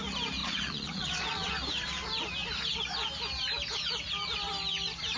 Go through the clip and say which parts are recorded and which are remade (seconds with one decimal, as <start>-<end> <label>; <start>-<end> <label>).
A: 0.0-0.4 recorded; 0.4-1.5 remade; 1.5-5.2 recorded